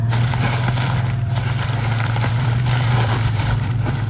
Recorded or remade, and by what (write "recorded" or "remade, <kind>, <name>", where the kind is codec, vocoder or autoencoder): remade, vocoder, BigVGAN v2